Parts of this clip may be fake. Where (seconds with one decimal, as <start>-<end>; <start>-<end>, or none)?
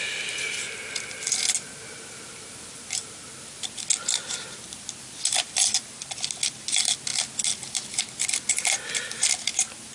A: none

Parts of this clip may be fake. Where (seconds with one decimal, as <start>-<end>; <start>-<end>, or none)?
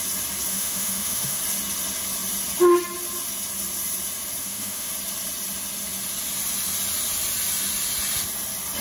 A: 0.5-1.4; 4.4-4.9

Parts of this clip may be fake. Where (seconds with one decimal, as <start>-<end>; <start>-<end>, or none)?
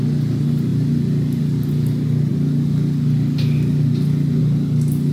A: none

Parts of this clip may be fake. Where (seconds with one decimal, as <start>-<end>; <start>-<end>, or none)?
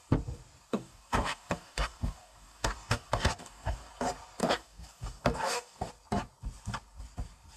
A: 0.7-3.9; 4.4-5.9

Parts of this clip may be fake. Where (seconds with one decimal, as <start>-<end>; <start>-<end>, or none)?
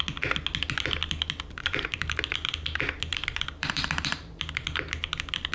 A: 1.6-2.2; 3.1-4.4